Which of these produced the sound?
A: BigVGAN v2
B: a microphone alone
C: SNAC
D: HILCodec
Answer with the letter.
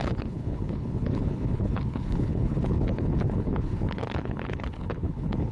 D